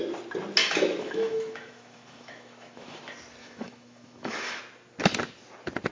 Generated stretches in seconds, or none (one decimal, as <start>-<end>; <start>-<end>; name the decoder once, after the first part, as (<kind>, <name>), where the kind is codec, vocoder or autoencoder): 0.6-3.0 (autoencoder, DAC-VAE); 3.4-4.6